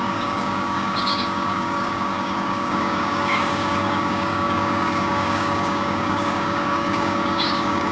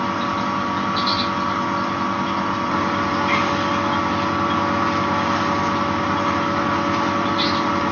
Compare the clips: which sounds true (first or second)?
second